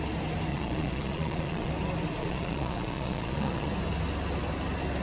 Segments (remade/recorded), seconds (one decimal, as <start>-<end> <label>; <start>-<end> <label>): 0.0-0.5 recorded; 0.5-1.7 remade; 1.7-2.2 recorded; 2.2-3.7 remade; 3.7-5.0 recorded